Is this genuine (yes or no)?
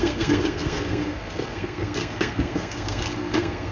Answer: no